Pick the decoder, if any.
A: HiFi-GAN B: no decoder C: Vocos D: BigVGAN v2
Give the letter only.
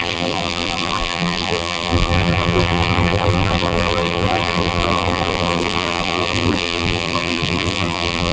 D